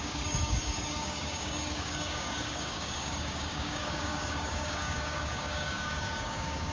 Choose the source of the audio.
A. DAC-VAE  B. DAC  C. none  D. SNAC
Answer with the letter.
B